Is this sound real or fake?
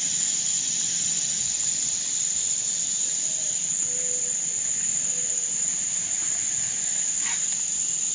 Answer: real